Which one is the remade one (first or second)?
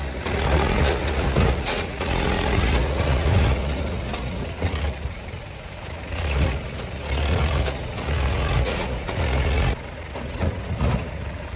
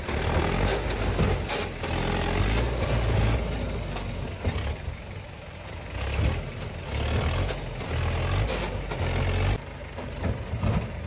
first